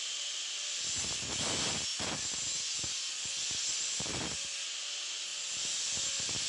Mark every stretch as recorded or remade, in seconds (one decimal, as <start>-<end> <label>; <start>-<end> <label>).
0.0-6.5 recorded